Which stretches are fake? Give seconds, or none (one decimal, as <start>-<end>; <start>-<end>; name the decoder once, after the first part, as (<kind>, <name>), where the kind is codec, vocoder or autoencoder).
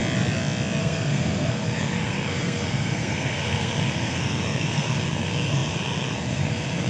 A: 0.8-6.9 (codec, SNAC)